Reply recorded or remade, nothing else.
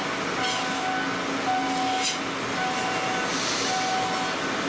recorded